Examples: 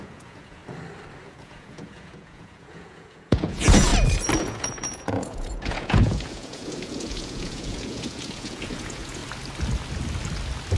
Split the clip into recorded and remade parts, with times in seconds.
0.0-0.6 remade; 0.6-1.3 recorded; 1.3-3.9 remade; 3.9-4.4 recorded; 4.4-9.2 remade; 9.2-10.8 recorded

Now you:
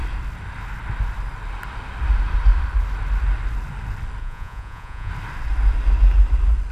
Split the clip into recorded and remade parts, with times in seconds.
0.0-4.2 recorded; 4.2-5.1 remade; 5.1-6.7 recorded

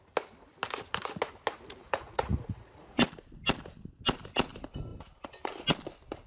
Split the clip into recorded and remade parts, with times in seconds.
0.0-1.8 recorded; 1.8-3.0 remade; 3.0-6.3 recorded

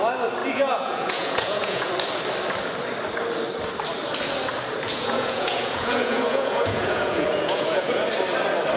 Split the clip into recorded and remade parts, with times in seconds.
0.0-0.4 recorded; 0.4-1.9 remade; 1.9-4.9 recorded; 4.9-8.0 remade; 8.0-8.8 recorded

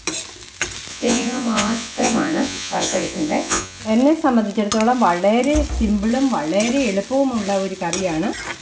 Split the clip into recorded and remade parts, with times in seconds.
0.0-0.9 recorded; 0.9-3.8 remade; 3.8-8.6 recorded

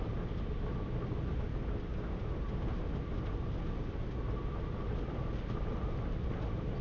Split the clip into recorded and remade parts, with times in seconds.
0.0-6.8 recorded